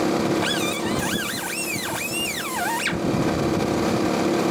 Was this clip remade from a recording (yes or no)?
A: no